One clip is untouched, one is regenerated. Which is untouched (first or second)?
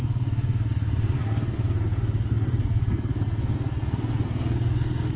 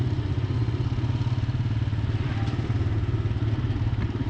second